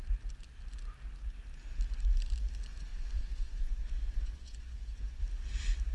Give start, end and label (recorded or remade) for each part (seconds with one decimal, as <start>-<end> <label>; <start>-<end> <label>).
0.0-2.9 recorded; 2.9-5.2 remade; 5.2-5.9 recorded